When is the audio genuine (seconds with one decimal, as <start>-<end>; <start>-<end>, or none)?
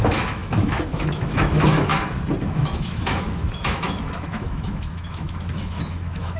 1.9-2.5